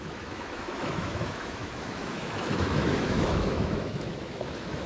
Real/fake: fake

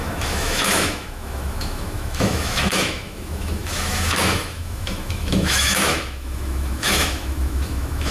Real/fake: fake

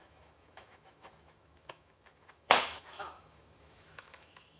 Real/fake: fake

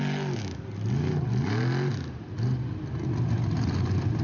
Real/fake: real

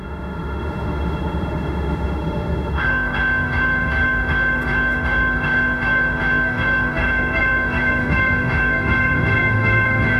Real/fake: fake